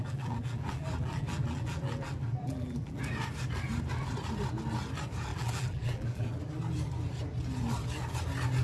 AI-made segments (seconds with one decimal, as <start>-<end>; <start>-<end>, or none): 0.0-3.0; 5.3-6.4